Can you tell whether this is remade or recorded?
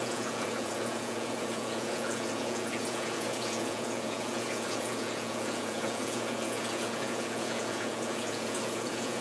remade